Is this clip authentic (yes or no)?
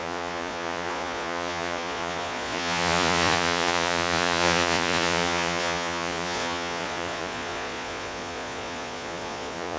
no